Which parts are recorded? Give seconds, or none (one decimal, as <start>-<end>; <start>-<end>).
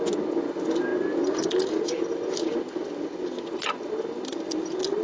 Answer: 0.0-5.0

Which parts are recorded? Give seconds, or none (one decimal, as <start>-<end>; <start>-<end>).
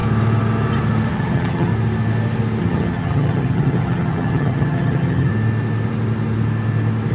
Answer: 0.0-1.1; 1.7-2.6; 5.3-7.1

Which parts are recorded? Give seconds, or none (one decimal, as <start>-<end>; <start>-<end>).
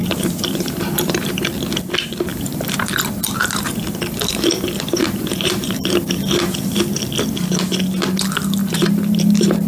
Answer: 1.4-2.3; 2.9-4.3; 6.7-8.6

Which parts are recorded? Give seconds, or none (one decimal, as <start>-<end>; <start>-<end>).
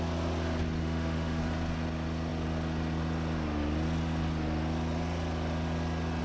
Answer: 0.0-0.8; 1.4-6.2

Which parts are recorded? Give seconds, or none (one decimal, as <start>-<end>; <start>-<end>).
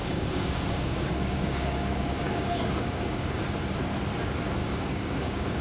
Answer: 3.4-4.6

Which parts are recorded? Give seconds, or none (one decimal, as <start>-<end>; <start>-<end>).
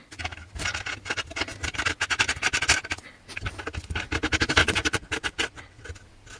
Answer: 0.0-4.6; 5.9-6.4